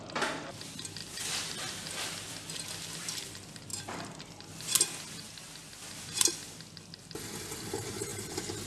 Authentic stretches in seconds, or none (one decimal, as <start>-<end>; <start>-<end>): 0.0-8.7